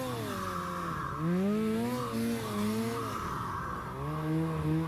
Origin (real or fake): real